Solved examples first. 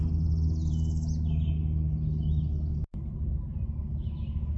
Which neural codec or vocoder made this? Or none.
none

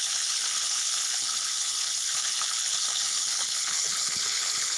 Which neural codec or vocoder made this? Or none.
codec, HILCodec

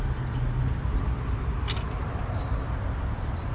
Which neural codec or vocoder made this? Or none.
none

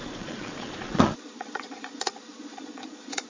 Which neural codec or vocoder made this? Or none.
vocoder, Vocos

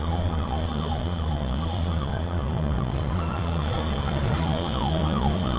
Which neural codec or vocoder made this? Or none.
vocoder, Vocos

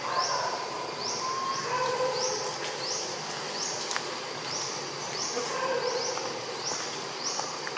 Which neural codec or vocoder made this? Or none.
none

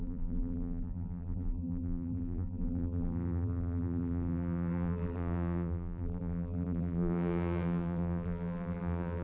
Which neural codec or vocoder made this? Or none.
vocoder, BigVGAN v2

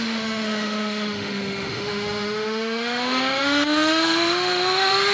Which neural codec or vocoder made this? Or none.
autoencoder, DAC-VAE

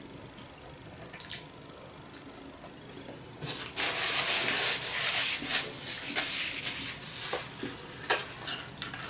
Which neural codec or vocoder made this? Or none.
none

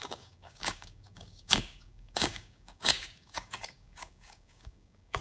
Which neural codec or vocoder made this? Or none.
codec, DAC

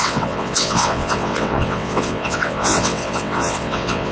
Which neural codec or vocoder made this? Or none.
vocoder, WaveNeXt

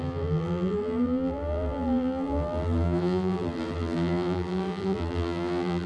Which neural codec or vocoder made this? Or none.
vocoder, BigVGAN v2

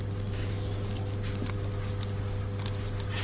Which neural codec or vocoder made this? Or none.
none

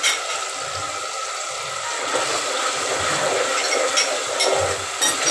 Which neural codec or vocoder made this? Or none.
none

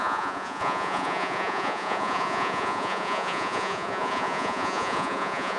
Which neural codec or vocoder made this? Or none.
vocoder, Vocos